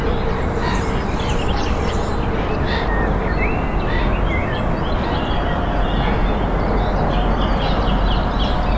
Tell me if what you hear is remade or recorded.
recorded